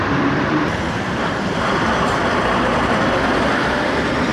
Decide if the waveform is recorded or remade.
remade